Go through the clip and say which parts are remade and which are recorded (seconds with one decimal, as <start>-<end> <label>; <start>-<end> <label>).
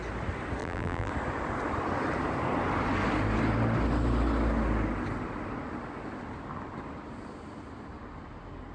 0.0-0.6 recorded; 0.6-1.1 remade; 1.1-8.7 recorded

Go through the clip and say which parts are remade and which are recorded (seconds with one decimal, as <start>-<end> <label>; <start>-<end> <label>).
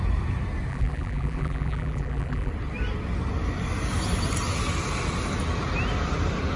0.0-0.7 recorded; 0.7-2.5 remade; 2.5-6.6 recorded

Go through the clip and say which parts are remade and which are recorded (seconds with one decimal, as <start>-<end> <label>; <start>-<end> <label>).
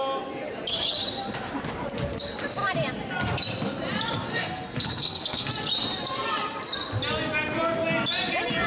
0.0-4.3 recorded; 4.3-5.5 remade; 5.5-8.7 recorded